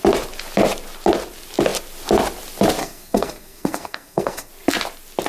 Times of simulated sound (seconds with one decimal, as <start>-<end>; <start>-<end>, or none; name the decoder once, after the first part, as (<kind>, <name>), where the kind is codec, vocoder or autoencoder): 2.8-4.5 (codec, SNAC)